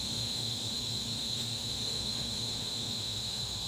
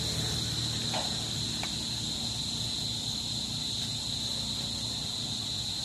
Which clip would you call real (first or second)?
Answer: second